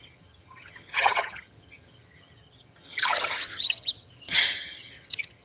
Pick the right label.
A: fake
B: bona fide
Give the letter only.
A